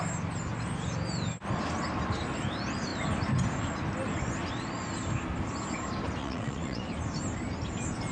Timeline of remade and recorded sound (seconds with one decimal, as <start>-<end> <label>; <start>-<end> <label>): 0.0-6.2 recorded; 6.2-6.8 remade; 6.8-8.1 recorded